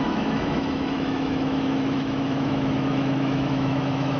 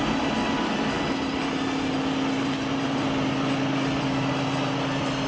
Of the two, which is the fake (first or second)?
first